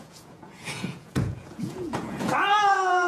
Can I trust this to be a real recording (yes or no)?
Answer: no